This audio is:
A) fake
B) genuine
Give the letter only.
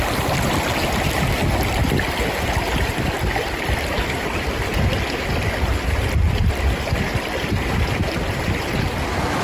B